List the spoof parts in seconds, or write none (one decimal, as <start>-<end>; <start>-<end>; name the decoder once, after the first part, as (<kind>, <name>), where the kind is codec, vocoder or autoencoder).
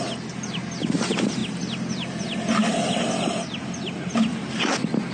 none